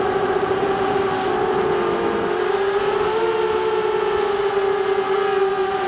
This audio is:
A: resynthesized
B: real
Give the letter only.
B